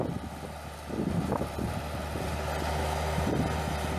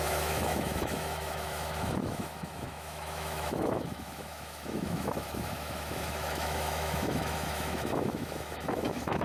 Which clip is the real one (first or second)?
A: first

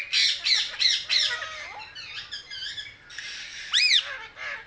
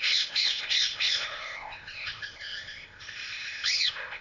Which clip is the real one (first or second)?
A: first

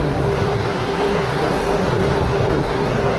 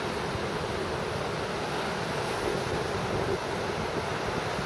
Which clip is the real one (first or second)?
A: second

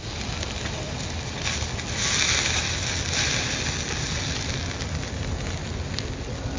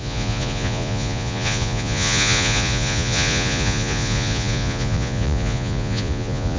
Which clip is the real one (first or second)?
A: first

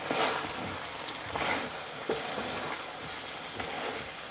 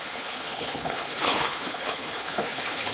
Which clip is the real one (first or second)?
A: first